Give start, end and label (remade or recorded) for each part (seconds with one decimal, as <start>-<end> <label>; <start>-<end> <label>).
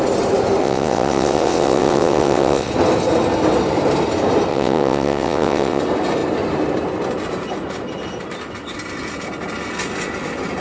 0.0-0.6 recorded; 0.6-2.7 remade; 2.7-4.5 recorded; 4.5-5.8 remade; 5.8-10.6 recorded